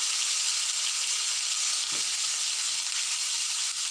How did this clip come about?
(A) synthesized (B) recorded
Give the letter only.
B